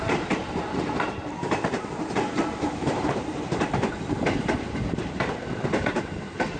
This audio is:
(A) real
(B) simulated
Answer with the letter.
B